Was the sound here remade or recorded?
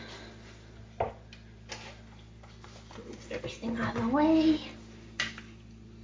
recorded